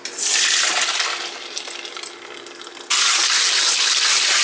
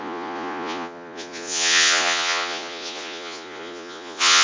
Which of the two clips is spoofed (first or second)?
second